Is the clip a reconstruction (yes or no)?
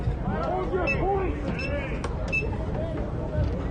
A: no